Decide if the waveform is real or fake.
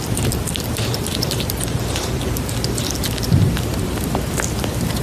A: fake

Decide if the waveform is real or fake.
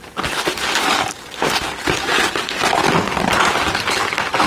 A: real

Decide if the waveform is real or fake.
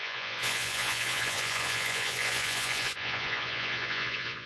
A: fake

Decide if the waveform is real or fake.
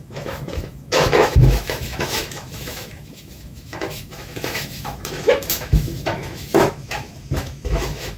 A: fake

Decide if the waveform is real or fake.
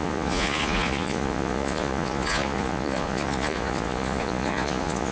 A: fake